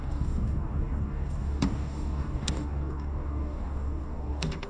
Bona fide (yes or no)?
no